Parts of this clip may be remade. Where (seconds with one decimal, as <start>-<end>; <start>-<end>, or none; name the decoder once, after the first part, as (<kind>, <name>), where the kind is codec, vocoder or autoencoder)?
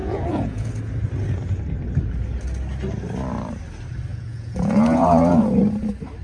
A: 0.0-0.7 (vocoder, Vocos); 4.1-5.4